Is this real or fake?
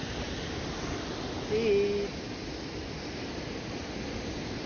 real